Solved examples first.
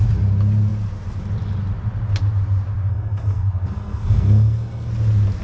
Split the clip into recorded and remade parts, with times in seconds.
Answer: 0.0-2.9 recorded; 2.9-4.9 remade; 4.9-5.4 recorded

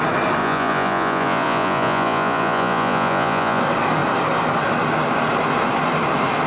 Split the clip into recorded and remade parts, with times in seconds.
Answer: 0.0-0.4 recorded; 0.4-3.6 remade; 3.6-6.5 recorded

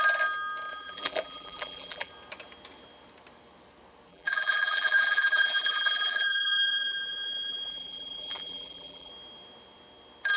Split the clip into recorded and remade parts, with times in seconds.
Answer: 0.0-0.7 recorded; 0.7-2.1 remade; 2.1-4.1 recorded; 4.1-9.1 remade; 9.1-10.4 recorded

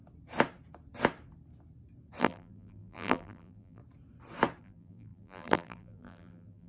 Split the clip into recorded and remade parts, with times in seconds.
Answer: 0.0-2.2 recorded; 2.2-3.8 remade; 3.8-4.6 recorded; 4.6-6.7 remade

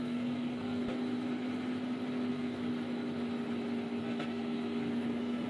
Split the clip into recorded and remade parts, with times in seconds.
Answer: 0.0-0.8 remade; 0.8-2.3 recorded; 2.3-2.7 remade; 2.7-4.0 recorded; 4.0-5.5 remade

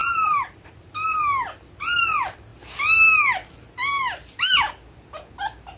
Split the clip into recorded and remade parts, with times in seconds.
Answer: 0.0-0.7 remade; 0.7-5.8 recorded

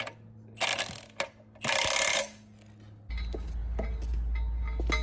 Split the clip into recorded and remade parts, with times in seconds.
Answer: 0.0-5.0 recorded

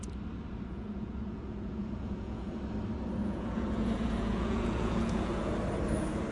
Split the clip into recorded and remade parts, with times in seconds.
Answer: 0.0-0.7 recorded; 0.7-2.6 remade; 2.6-3.2 recorded; 3.2-5.5 remade; 5.5-6.3 recorded